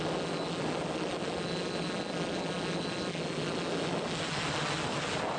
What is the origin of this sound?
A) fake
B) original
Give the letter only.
B